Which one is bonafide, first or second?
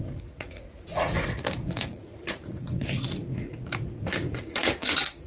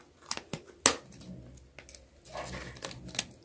second